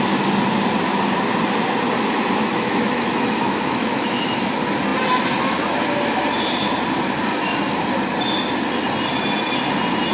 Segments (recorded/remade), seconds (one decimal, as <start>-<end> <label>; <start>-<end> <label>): 0.0-2.5 recorded; 2.5-4.4 remade; 4.4-10.1 recorded